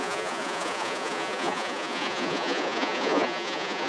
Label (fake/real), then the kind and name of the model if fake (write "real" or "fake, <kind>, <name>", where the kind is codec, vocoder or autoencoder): fake, vocoder, Vocos